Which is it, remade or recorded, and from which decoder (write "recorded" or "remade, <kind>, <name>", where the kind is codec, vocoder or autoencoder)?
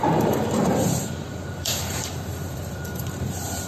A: remade, vocoder, BigVGAN v2